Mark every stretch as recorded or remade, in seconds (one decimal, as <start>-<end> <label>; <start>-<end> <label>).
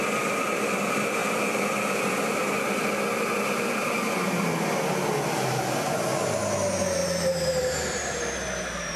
0.0-7.0 recorded; 7.0-8.2 remade; 8.2-9.0 recorded